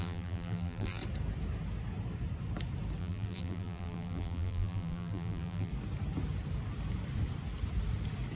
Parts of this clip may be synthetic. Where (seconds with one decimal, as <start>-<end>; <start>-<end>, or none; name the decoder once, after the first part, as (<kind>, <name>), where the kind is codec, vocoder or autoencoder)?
0.0-1.0 (vocoder, BigVGAN v2); 3.0-5.7

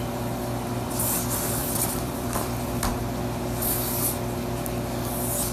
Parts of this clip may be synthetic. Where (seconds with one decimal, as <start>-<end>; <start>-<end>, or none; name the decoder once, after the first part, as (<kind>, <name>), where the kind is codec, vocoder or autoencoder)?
1.6-2.9 (vocoder, BigVGAN v2)

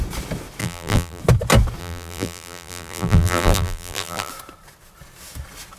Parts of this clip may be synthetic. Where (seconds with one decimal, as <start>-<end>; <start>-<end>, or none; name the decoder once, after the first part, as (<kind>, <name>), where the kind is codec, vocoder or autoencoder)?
0.6-1.2 (vocoder, BigVGAN v2); 1.8-4.3

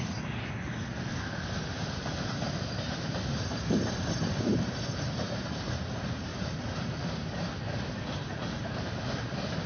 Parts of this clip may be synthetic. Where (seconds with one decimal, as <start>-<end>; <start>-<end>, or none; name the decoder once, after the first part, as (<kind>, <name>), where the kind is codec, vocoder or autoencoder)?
1.7-5.6 (vocoder, BigVGAN v2); 6.3-9.0